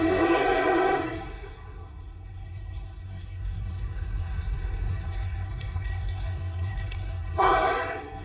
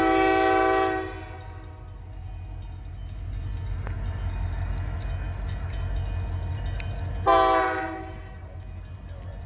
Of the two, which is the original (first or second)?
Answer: second